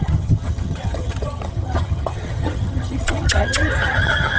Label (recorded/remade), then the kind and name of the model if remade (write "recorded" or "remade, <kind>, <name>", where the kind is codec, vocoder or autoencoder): remade, vocoder, HiFi-GAN